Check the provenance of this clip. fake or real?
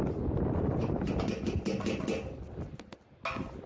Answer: real